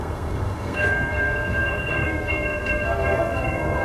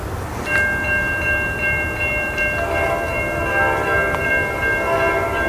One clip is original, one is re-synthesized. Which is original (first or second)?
second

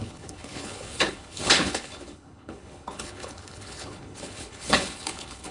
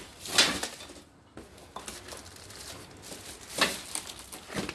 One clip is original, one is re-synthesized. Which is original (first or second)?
second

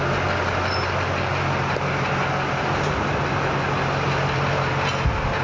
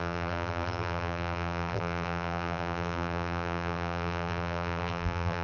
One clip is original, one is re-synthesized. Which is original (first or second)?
first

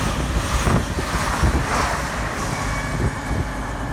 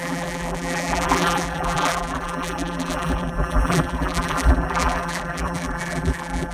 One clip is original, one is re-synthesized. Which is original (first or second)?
first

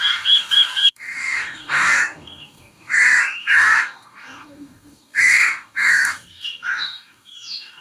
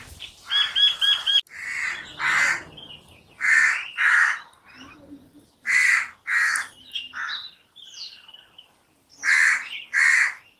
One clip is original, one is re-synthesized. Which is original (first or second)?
second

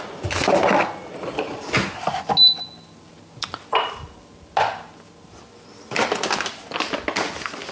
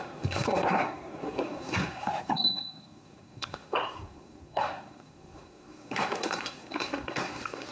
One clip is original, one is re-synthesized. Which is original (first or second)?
first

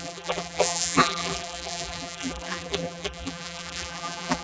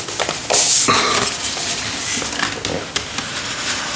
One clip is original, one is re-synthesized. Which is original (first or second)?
second